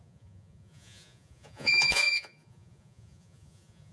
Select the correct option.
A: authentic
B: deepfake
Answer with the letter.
B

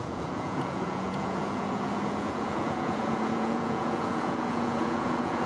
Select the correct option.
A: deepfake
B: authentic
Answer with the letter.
A